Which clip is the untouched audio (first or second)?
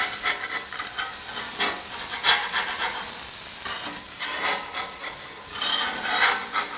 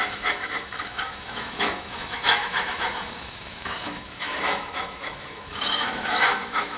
first